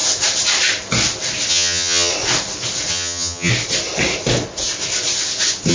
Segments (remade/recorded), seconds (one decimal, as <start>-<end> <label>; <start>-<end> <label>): 0.0-1.5 recorded; 1.5-2.1 remade; 2.1-2.9 recorded; 2.9-3.5 remade; 3.5-5.7 recorded